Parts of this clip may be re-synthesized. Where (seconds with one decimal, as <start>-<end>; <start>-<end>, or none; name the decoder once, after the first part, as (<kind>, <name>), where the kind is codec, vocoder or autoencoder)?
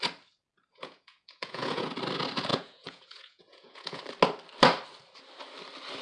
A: 0.7-1.9 (vocoder, Vocos); 2.5-4.0